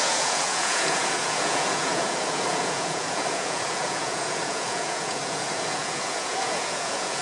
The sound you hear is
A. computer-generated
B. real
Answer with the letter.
A